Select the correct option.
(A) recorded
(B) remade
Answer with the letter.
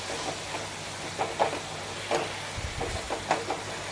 A